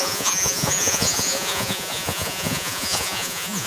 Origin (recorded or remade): remade